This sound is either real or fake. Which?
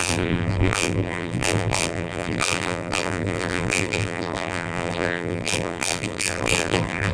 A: fake